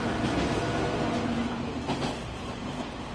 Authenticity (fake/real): real